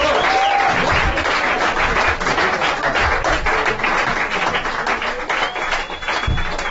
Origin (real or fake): real